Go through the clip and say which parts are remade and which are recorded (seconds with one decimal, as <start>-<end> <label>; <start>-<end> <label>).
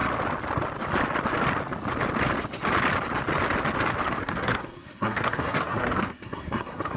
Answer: 0.0-4.2 recorded; 4.2-7.0 remade